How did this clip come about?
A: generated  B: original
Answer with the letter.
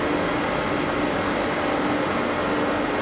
B